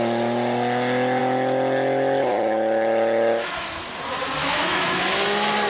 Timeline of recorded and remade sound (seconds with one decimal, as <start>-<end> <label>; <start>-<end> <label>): 0.0-4.4 recorded; 4.4-5.0 remade; 5.0-5.7 recorded